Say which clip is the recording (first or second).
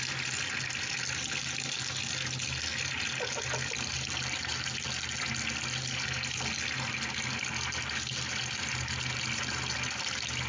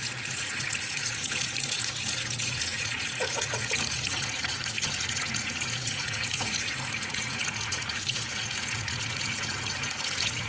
first